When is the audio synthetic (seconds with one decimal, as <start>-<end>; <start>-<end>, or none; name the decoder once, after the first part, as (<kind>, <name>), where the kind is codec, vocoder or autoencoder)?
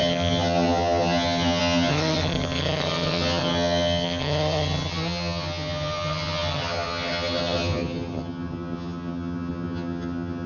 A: 0.0-10.5 (vocoder, HiFi-GAN)